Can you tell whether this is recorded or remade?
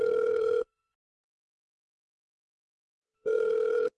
remade